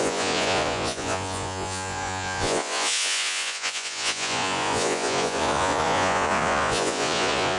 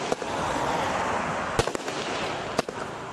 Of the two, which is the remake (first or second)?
first